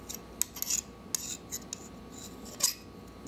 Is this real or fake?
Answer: real